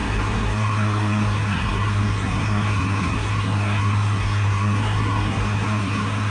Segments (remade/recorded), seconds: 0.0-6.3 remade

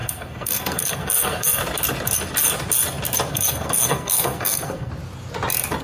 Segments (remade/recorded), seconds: 0.0-1.6 remade; 1.6-3.3 recorded; 3.3-4.9 remade; 4.9-5.8 recorded

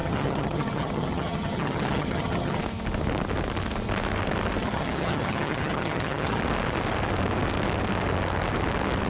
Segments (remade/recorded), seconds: 0.0-2.6 remade; 2.6-4.6 recorded; 4.6-6.4 remade; 6.4-9.1 recorded

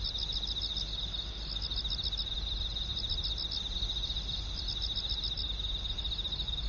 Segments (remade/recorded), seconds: 0.0-6.7 recorded

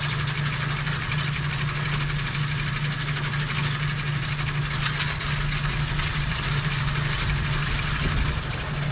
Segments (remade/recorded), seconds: 0.0-6.1 recorded; 6.1-6.7 remade; 6.7-8.9 recorded